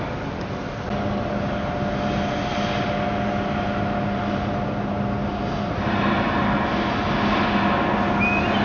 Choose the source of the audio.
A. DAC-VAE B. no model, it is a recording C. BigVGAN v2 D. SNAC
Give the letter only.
B